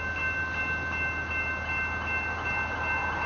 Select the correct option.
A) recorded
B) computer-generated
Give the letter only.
A